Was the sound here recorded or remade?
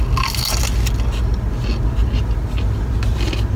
recorded